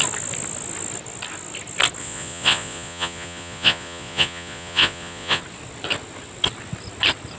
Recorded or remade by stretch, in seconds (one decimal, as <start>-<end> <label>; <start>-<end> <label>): 0.0-2.0 recorded; 2.0-5.4 remade; 5.4-7.4 recorded